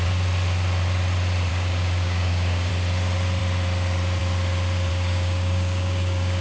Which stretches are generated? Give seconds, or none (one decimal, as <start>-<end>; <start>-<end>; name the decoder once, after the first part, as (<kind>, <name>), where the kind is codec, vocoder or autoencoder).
1.5-2.7 (codec, DAC); 4.9-6.4